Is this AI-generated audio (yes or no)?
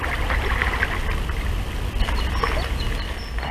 no